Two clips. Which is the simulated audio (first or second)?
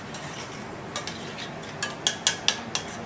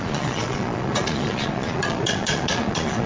second